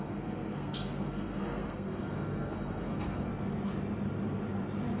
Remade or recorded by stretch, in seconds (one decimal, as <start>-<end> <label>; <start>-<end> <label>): 0.0-3.3 remade; 3.3-5.0 recorded